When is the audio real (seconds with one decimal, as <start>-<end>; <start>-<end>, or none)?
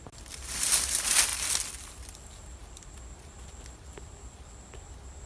0.0-5.3